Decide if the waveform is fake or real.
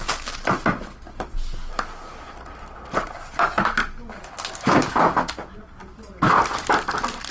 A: real